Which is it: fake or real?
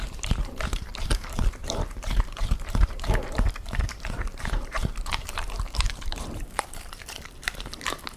fake